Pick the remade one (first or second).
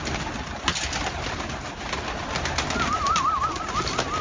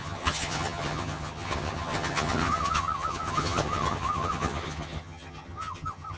second